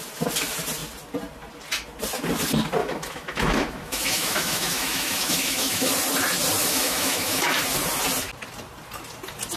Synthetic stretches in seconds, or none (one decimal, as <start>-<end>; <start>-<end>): 2.8-5.9; 6.6-7.6